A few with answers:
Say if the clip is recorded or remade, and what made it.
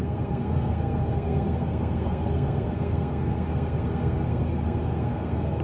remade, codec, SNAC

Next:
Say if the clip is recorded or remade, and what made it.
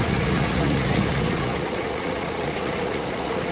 remade, vocoder, Vocos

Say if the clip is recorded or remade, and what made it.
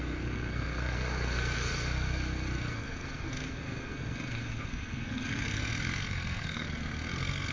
remade, codec, SNAC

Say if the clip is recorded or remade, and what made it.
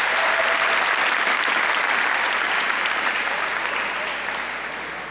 recorded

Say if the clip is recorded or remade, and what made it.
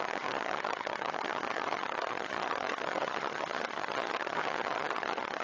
remade, vocoder, HiFi-GAN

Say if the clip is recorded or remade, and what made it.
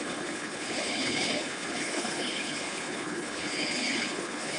remade, codec, HILCodec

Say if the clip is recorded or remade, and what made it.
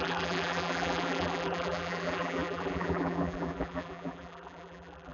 remade, vocoder, BigVGAN v2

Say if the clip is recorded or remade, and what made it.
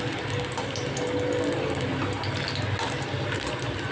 recorded